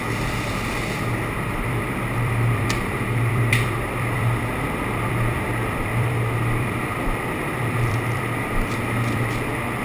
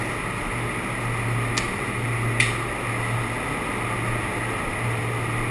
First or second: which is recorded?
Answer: second